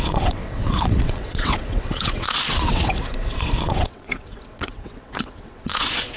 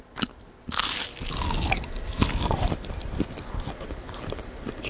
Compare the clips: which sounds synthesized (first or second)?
first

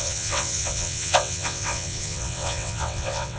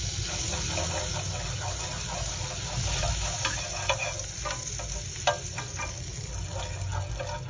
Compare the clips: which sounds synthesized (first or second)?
first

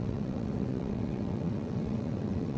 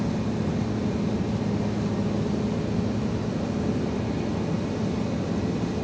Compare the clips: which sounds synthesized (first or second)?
first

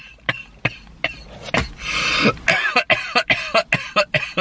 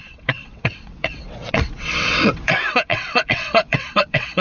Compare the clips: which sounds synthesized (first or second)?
second